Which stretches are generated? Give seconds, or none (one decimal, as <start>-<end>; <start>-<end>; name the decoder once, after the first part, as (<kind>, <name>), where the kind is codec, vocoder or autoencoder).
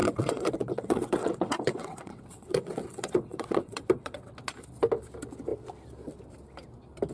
0.0-4.3 (vocoder, WaveNeXt)